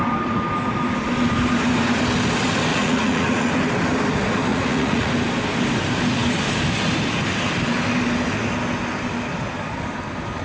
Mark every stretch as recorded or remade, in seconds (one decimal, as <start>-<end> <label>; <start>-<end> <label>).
0.0-2.7 recorded; 2.7-3.5 remade; 3.5-4.5 recorded; 4.5-5.1 remade; 5.1-10.4 recorded